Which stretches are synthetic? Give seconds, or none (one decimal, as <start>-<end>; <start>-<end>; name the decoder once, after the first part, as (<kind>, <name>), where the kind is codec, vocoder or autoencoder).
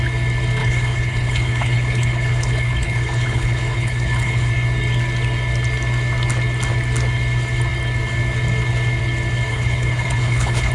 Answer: 0.6-4.5 (codec, HILCodec); 9.5-10.7